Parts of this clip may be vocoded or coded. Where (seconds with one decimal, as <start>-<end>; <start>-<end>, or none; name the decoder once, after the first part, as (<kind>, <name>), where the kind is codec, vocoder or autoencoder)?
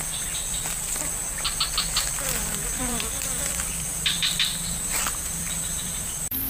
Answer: 2.4-6.5 (vocoder, BigVGAN v2)